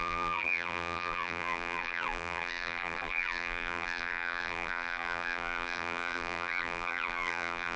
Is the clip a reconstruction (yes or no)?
yes